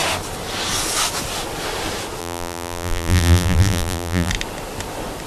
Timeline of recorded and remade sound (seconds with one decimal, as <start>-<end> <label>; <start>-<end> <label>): 0.0-2.2 recorded; 2.2-4.3 remade; 4.3-5.3 recorded